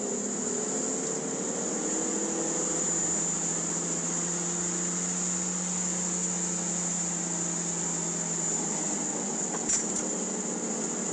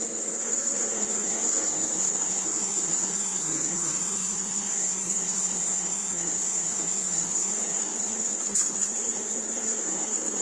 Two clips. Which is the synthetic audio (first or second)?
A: second